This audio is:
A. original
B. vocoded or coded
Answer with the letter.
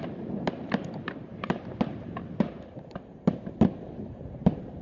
B